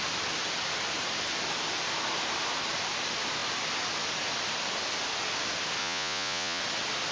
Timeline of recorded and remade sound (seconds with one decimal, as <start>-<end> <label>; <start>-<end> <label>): 0.0-5.8 recorded; 5.8-6.6 remade; 6.6-7.1 recorded